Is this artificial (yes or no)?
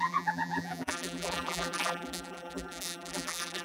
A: yes